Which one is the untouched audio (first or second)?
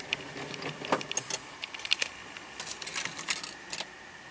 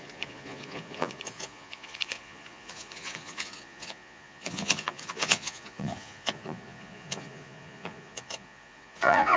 first